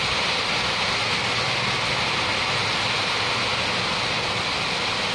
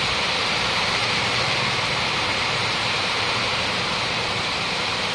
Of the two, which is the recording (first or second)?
first